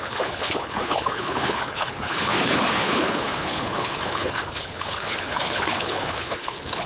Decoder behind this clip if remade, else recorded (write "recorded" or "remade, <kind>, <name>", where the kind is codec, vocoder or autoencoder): remade, codec, HILCodec